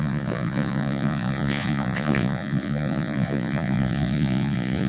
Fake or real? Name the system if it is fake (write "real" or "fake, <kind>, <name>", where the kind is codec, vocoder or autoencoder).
fake, vocoder, Vocos